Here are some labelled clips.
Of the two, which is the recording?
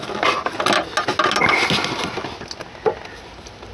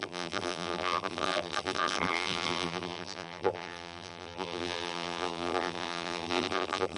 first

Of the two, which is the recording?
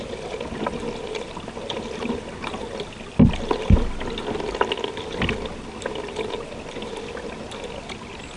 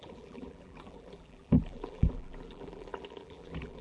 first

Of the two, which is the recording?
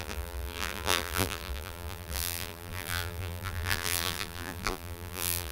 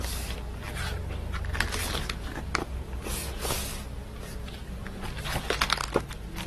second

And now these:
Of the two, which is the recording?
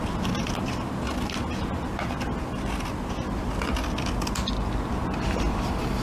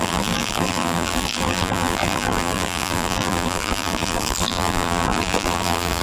first